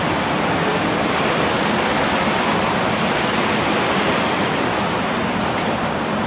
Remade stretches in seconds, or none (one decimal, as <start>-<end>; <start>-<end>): none